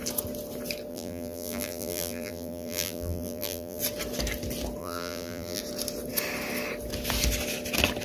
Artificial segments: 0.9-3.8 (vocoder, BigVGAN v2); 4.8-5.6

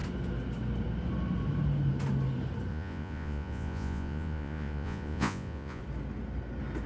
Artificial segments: 2.7-5.8 (vocoder, Vocos)

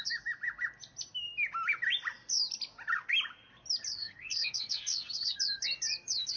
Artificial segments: 4.0-5.4 (codec, SNAC)

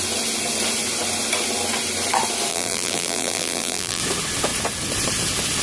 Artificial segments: 2.5-4.0 (vocoder, BigVGAN v2)

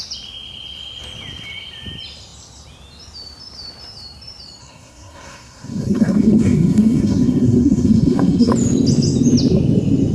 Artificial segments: 4.6-8.5 (codec, SNAC)